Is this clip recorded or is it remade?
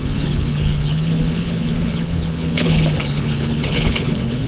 remade